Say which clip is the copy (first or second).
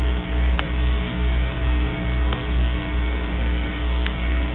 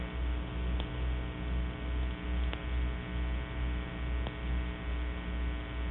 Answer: first